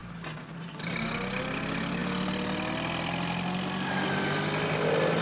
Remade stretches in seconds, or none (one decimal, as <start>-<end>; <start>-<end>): none